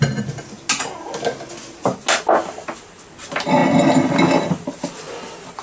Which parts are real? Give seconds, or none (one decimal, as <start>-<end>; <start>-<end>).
0.0-5.6